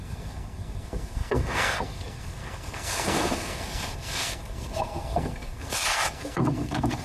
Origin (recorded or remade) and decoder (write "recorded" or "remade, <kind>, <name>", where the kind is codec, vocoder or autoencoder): remade, codec, SNAC